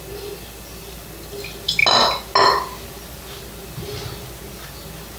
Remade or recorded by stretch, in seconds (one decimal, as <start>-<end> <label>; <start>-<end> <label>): 0.0-5.2 recorded